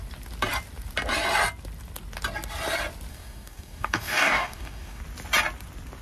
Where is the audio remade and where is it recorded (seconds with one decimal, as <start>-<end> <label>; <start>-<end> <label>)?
0.0-3.1 recorded; 3.1-5.0 remade; 5.0-6.0 recorded